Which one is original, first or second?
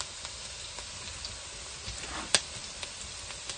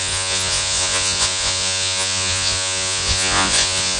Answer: first